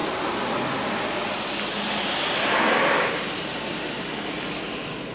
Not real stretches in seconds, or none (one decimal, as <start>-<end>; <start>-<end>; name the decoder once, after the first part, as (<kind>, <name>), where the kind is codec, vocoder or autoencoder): none